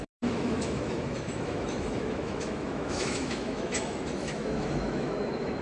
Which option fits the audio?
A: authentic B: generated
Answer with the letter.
B